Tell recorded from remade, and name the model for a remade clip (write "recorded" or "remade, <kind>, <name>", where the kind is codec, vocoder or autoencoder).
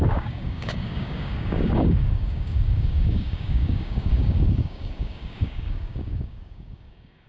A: remade, codec, DAC